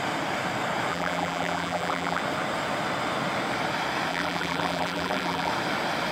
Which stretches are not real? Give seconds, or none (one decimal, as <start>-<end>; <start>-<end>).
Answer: 0.9-2.2; 4.1-5.5